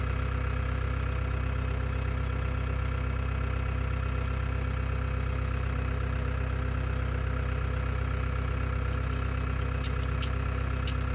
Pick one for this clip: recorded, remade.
recorded